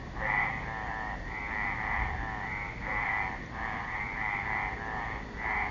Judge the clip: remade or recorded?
recorded